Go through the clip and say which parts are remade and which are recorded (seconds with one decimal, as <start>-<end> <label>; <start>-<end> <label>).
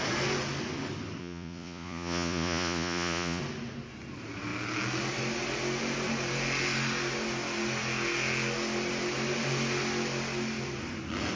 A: 0.0-1.2 recorded; 1.2-3.4 remade; 3.4-11.4 recorded